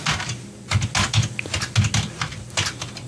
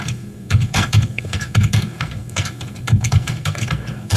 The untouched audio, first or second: first